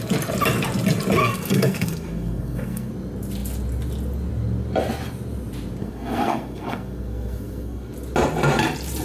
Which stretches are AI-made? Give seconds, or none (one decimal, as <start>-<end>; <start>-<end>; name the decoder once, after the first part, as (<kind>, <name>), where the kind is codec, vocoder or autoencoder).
1.2-2.9 (codec, SNAC); 5.8-7.9